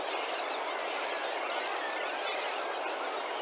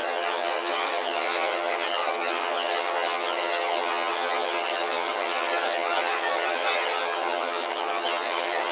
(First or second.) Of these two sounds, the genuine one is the first